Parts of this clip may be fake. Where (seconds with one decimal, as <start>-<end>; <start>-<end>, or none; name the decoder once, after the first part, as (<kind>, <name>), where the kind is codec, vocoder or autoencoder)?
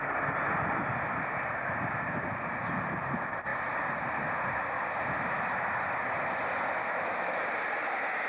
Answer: 6.8-7.5 (autoencoder, DAC-VAE)